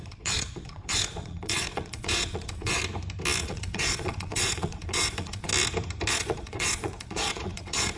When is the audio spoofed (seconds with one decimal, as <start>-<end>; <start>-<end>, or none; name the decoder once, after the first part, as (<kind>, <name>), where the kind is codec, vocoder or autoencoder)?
0.0-2.8 (vocoder, Vocos); 3.4-5.5; 6.1-8.0